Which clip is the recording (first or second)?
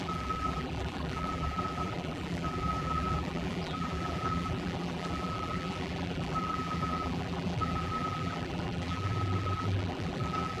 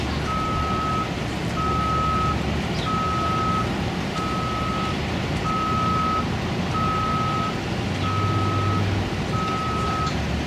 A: second